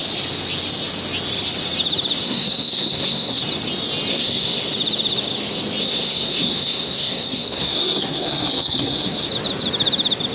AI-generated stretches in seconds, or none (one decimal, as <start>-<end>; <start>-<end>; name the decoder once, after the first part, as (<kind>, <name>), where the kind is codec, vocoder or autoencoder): 2.2-3.4 (codec, SNAC); 4.1-4.6; 5.8-9.3

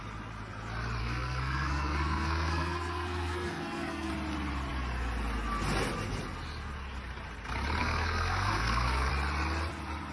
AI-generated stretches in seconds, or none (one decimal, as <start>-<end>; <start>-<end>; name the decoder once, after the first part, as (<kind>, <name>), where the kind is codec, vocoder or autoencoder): 1.0-4.1 (codec, SNAC); 7.8-9.1

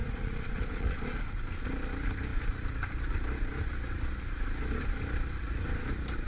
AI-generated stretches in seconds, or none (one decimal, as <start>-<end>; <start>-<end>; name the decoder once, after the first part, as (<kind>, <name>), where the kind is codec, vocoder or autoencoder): 0.0-1.2 (vocoder, Vocos)

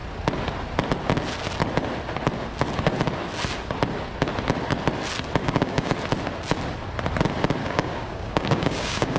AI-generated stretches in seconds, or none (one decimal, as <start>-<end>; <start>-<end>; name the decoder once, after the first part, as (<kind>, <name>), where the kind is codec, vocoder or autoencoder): 5.4-5.9 (codec, DAC); 7.6-9.2